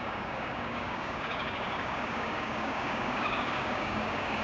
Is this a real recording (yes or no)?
no